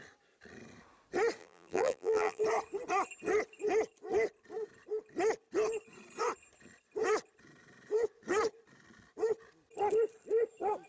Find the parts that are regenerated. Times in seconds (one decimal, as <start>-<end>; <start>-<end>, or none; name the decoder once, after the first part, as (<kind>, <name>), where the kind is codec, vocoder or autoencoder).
1.4-2.4 (vocoder, BigVGAN v2)